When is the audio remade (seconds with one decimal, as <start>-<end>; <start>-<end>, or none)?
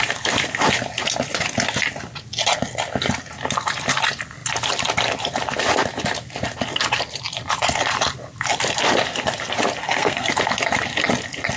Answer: 9.8-10.3